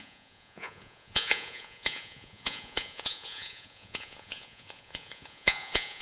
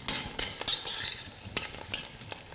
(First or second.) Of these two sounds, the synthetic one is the first